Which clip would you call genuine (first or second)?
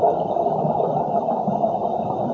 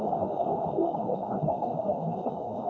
first